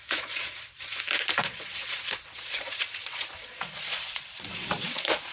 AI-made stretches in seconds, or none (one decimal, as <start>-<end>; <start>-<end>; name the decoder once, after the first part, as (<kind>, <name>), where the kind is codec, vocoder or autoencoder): 0.0-0.9 (vocoder, Vocos); 1.4-5.3